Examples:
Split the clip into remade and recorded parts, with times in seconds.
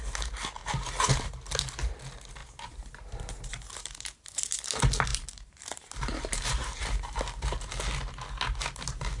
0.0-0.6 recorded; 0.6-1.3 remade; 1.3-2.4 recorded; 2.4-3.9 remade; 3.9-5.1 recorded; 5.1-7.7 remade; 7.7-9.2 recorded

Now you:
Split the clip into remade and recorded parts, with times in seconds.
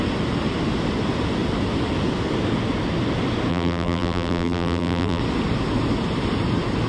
0.0-3.5 recorded; 3.5-5.2 remade; 5.2-6.9 recorded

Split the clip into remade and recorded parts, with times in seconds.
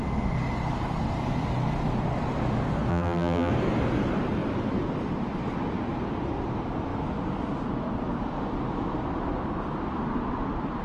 0.0-2.9 recorded; 2.9-3.5 remade; 3.5-10.8 recorded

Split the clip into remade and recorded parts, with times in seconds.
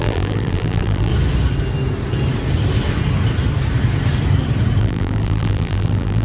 0.0-1.1 remade; 1.1-4.8 recorded; 4.8-6.2 remade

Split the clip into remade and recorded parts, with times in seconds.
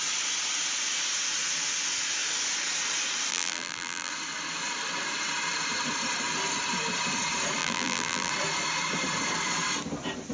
0.0-3.3 recorded; 3.3-4.1 remade; 4.1-7.6 recorded; 7.6-8.3 remade; 8.3-10.3 recorded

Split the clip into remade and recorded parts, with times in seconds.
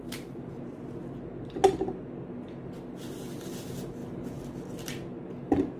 0.0-5.8 recorded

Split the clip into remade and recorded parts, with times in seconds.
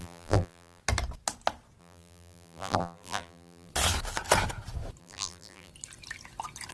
0.0-0.8 remade; 0.8-1.8 recorded; 1.8-3.7 remade; 3.7-5.0 recorded; 5.0-5.7 remade; 5.7-6.7 recorded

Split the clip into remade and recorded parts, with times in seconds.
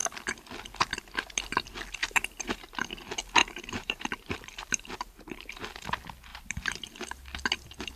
0.0-2.0 recorded; 2.0-2.8 remade; 2.8-3.4 recorded; 3.4-5.5 remade; 5.5-6.3 recorded; 6.3-6.8 remade; 6.8-8.0 recorded